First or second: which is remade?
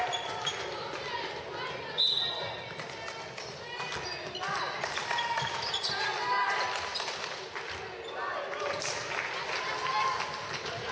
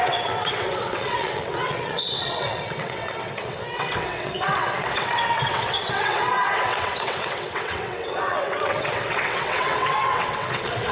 second